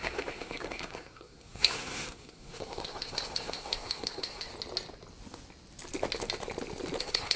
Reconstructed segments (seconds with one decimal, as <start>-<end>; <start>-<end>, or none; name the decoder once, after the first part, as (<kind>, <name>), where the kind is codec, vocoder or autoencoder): 0.0-4.5 (codec, SNAC); 7.0-7.4

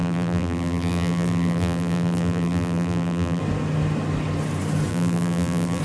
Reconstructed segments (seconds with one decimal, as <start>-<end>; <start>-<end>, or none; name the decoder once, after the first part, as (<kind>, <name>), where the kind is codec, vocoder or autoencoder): 0.0-3.4 (vocoder, BigVGAN v2); 4.9-5.8